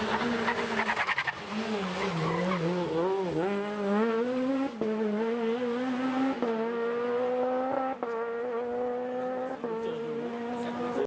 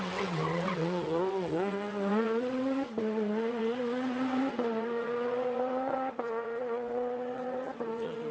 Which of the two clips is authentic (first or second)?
first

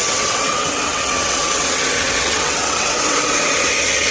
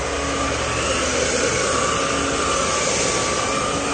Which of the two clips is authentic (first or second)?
second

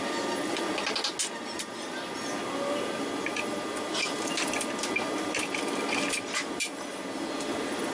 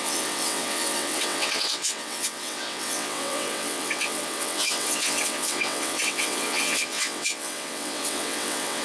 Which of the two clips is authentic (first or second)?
first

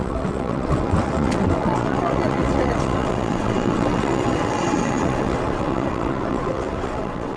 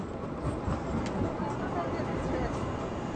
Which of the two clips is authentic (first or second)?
second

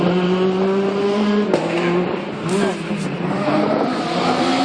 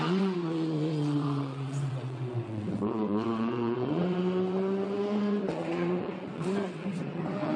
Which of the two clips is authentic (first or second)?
first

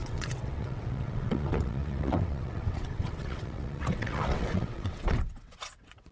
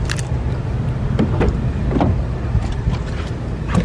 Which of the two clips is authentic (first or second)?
second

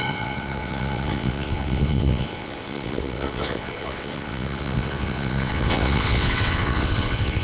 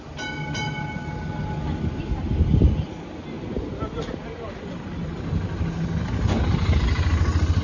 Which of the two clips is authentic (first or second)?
second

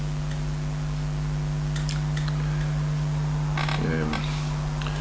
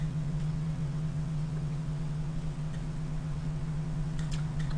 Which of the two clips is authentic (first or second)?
first